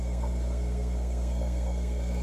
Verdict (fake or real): fake